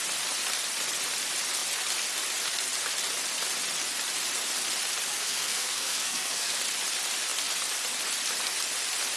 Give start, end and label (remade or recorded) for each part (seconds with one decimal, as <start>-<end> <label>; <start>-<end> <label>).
0.0-5.1 recorded; 5.1-6.6 remade; 6.6-9.2 recorded